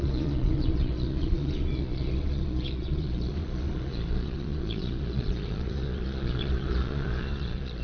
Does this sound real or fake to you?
fake